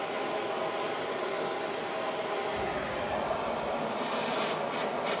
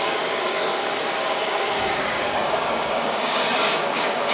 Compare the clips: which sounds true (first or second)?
first